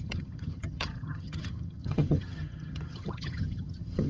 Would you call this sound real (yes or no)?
no